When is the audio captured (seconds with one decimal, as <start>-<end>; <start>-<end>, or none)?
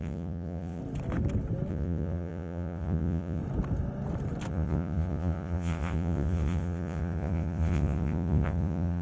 0.8-1.7; 3.4-4.5